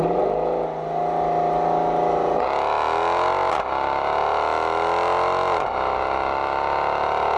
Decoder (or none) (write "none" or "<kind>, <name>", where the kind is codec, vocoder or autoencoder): none